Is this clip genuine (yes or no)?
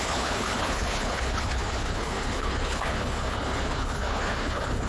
no